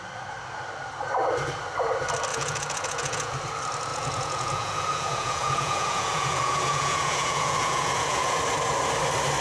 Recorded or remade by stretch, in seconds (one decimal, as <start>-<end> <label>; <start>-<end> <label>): 0.0-2.3 recorded; 2.3-3.3 remade; 3.3-3.9 recorded; 3.9-8.4 remade; 8.4-9.4 recorded